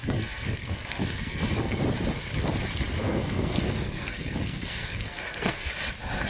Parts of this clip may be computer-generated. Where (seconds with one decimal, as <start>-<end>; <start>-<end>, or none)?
0.0-1.8; 3.0-5.7